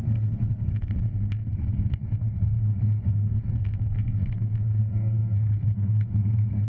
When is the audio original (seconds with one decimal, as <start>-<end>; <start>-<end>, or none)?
none

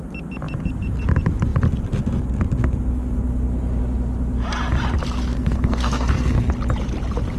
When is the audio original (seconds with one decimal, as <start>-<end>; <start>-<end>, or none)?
0.0-5.3; 6.5-7.4

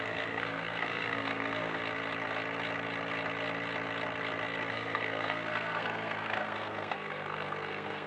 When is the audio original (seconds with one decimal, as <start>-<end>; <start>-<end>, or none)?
1.8-4.7

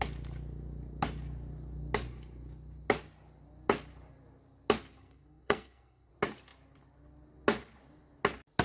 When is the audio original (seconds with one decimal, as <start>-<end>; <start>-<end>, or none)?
0.0-5.0; 6.1-8.6

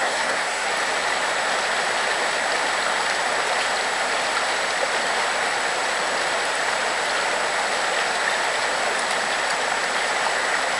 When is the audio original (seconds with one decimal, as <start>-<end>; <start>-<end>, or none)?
0.7-10.8